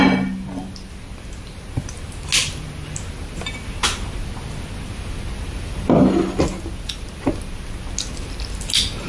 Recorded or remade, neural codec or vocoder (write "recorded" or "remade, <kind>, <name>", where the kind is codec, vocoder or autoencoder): recorded